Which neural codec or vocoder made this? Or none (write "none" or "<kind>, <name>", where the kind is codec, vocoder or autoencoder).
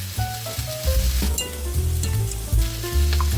none